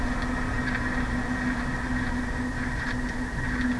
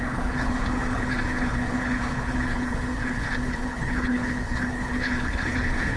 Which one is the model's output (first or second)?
second